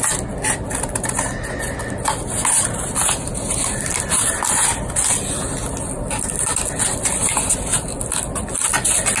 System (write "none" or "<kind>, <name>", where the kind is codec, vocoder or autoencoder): none